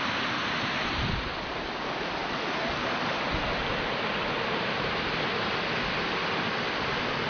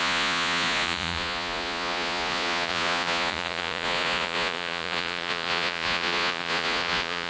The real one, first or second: first